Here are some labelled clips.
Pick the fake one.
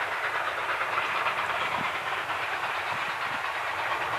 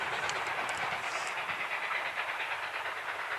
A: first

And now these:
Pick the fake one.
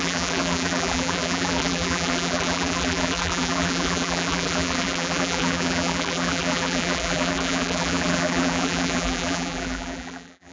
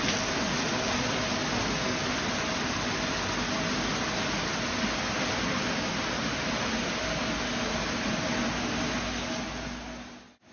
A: first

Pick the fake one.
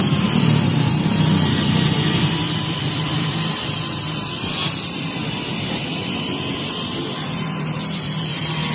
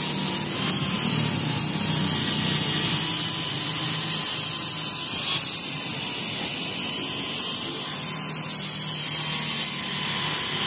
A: first